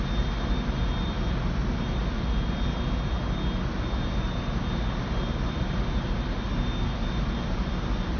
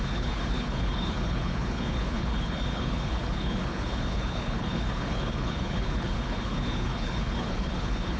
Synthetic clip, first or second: second